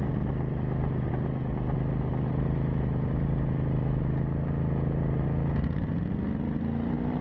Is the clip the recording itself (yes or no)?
yes